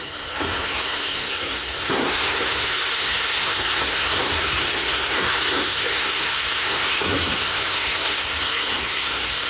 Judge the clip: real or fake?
fake